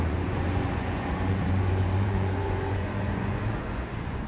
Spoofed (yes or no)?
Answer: yes